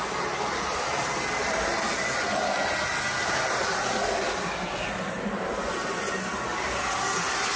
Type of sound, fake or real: real